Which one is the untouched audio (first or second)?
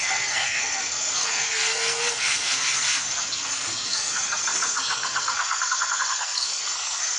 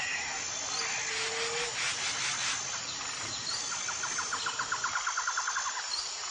second